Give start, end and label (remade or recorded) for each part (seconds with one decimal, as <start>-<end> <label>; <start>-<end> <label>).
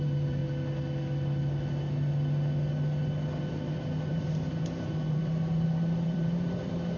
0.0-0.4 remade; 0.4-4.1 recorded; 4.1-7.0 remade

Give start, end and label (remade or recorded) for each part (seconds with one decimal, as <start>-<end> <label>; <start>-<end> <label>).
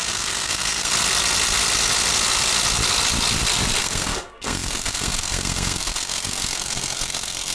0.0-0.9 remade; 0.9-3.8 recorded; 3.8-7.5 remade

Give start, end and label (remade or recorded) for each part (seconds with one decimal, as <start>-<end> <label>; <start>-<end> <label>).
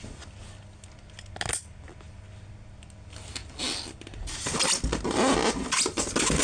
0.0-6.4 recorded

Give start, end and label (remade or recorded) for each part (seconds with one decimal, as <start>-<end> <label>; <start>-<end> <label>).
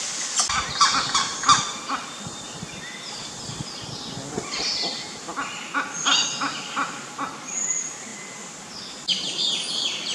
0.0-10.1 recorded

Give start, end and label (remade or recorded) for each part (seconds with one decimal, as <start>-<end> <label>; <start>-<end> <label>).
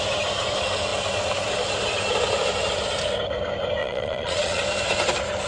0.0-3.8 recorded; 3.8-4.6 remade; 4.6-5.5 recorded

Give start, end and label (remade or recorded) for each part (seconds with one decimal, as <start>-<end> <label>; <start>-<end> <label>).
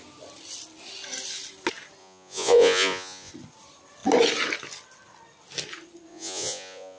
0.0-2.0 recorded; 2.0-3.3 remade; 3.3-6.1 recorded; 6.1-7.0 remade